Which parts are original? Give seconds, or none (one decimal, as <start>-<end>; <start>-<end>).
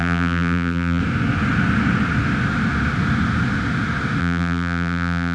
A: 1.0-4.2